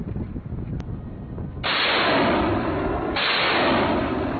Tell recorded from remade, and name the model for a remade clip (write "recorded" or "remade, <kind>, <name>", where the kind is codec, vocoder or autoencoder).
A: recorded